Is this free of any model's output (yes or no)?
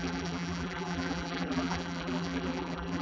no